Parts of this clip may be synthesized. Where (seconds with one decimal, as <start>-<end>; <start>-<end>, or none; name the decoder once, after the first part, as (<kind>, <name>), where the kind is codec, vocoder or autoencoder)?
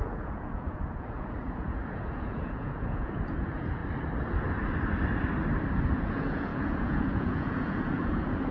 0.0-3.8 (vocoder, Vocos); 5.9-8.5